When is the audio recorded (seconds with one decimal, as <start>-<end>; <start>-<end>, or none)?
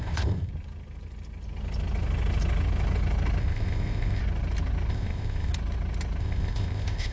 0.5-3.4; 4.2-4.9; 5.5-6.2